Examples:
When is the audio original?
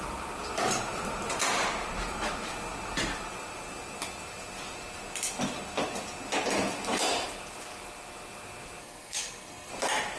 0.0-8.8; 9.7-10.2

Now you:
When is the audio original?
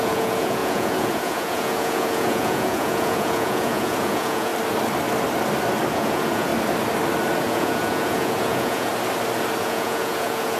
4.5-5.9; 6.5-7.5; 8.9-9.6